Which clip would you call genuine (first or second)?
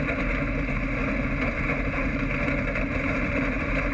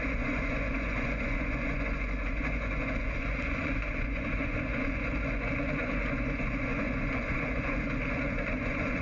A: first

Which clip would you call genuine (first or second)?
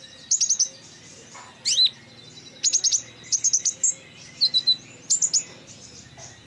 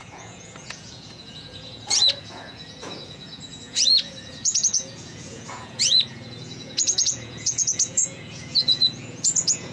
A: first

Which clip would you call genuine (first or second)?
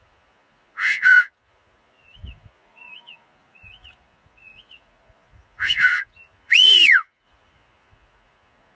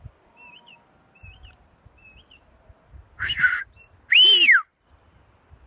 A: second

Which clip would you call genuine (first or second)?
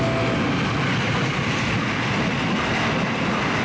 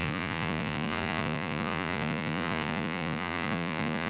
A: first